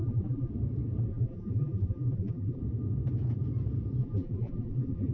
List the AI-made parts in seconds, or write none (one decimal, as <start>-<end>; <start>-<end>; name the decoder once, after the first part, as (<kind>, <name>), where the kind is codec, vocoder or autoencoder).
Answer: 0.0-0.5 (vocoder, BigVGAN v2); 1.1-2.6; 4.0-5.1